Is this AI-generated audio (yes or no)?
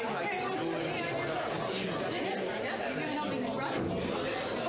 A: no